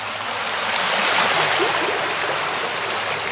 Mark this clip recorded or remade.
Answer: recorded